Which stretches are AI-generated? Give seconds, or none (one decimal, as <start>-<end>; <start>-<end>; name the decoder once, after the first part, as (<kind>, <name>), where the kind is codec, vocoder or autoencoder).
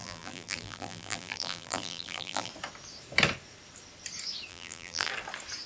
0.0-2.5 (vocoder, BigVGAN v2); 4.5-5.1